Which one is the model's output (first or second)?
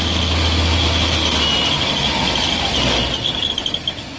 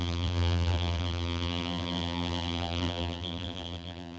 second